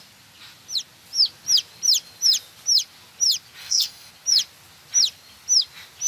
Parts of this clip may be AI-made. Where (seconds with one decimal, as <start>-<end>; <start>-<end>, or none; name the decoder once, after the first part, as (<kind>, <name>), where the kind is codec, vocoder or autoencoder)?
3.6-4.1 (codec, SNAC)